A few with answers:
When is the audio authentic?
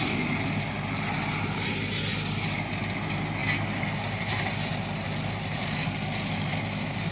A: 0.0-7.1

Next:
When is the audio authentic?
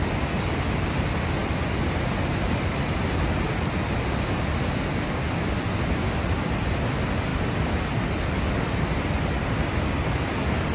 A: 0.0-10.7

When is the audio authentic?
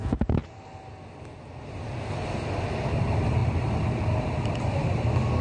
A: 0.0-5.4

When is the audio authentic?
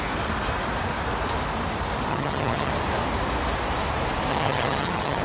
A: 0.0-2.1; 2.7-4.3